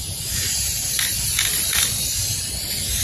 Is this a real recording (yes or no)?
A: yes